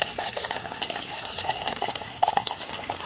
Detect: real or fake fake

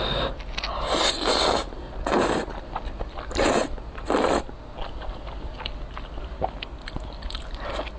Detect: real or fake real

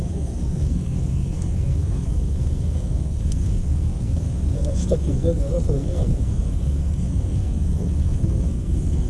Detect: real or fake fake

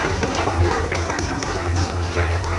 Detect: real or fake fake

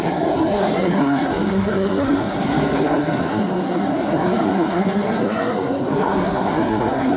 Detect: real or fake fake